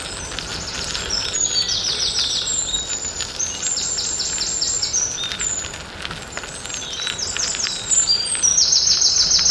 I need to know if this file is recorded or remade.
recorded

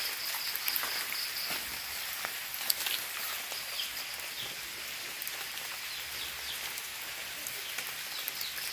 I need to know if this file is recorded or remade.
recorded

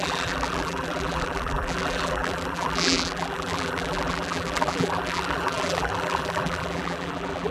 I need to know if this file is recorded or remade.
remade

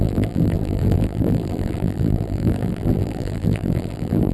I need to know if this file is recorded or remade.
remade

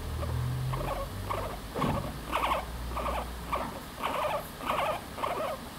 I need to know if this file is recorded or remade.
recorded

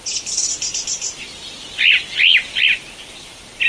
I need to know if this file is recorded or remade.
recorded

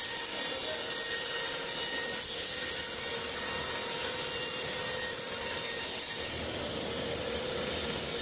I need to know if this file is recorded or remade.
recorded